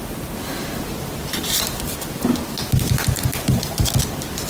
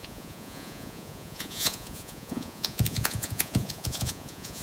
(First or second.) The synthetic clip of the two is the second